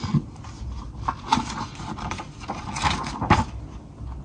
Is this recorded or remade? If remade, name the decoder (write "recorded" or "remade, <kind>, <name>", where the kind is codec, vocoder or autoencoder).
recorded